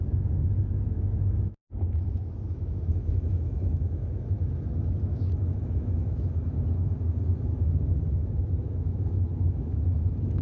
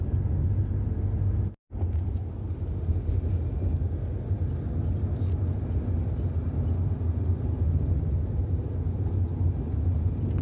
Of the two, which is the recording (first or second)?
second